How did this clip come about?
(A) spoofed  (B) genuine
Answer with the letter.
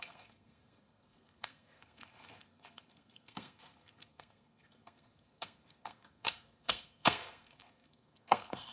A